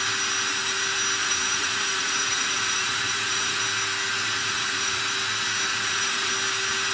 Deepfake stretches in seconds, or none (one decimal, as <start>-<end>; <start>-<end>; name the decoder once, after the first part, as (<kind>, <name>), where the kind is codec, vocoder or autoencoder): 1.2-3.6 (vocoder, Vocos); 4.4-5.0; 5.7-6.3